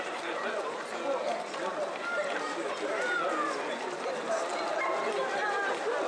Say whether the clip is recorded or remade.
recorded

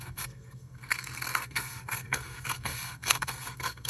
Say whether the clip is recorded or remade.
remade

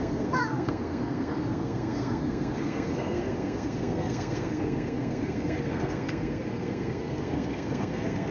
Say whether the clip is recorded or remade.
remade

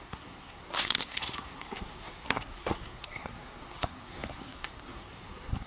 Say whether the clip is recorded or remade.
remade